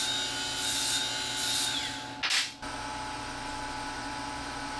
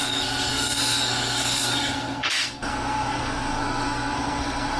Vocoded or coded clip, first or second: second